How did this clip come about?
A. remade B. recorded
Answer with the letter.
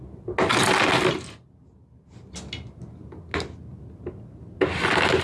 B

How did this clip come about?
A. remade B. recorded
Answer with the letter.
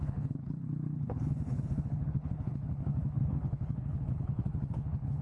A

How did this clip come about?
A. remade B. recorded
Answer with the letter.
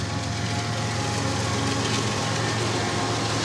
B